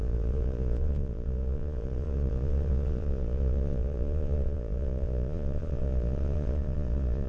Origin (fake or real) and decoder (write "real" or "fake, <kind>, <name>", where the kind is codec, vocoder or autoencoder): fake, vocoder, Vocos